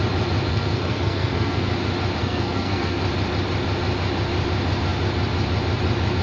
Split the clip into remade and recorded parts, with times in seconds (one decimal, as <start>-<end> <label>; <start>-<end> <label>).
0.0-0.5 recorded; 0.5-1.7 remade; 1.7-2.2 recorded; 2.2-3.0 remade; 3.0-6.2 recorded